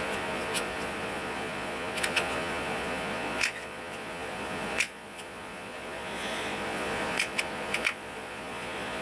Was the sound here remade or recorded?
remade